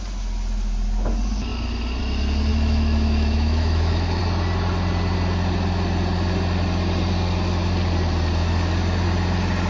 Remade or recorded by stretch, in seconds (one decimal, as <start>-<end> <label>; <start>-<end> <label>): 0.0-2.5 recorded; 2.5-4.2 remade; 4.2-9.7 recorded